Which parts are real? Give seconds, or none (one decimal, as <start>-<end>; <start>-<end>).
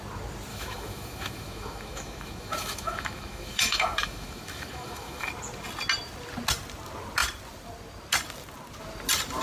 0.0-0.5; 5.3-9.4